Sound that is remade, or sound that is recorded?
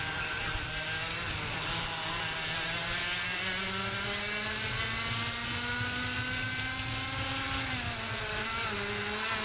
recorded